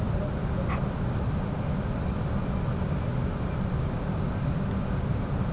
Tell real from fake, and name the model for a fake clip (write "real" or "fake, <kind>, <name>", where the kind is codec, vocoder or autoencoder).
real